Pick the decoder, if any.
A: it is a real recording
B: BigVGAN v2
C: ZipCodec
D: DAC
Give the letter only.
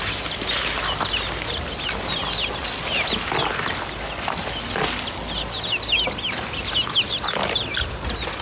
A